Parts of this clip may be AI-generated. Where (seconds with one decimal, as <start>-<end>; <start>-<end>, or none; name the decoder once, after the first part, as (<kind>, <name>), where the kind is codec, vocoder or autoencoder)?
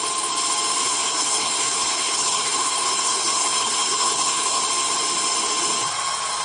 0.8-4.6 (codec, HILCodec)